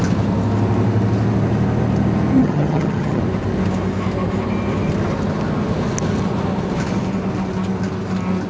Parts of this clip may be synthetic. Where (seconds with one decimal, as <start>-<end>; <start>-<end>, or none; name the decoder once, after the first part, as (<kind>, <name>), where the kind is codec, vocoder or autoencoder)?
2.4-3.2 (vocoder, HiFi-GAN)